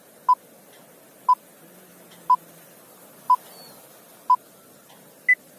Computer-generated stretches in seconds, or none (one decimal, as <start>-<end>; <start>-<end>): none